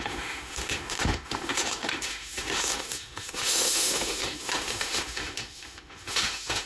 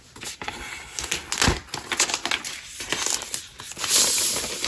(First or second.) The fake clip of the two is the first